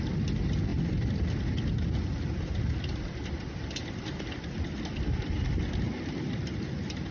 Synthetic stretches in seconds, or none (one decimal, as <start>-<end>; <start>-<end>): 0.7-1.2